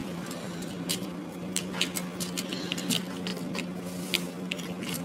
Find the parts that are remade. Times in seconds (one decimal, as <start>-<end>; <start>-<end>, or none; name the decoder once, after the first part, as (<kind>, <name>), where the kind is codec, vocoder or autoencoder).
0.0-1.6 (vocoder, BigVGAN v2)